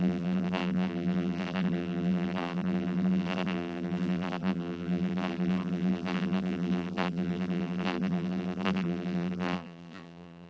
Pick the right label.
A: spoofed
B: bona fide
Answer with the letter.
A